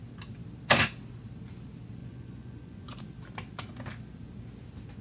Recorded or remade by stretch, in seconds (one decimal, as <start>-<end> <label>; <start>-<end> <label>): 0.0-2.0 recorded; 2.0-3.0 remade; 3.0-5.0 recorded